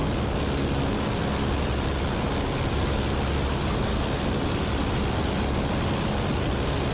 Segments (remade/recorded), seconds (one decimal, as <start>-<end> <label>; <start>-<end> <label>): 0.0-6.9 recorded